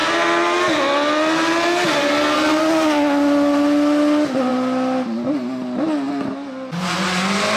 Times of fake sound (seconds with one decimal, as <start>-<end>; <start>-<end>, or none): none